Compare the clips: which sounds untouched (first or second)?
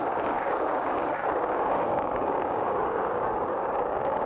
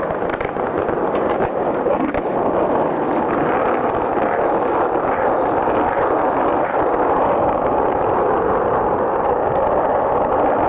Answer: second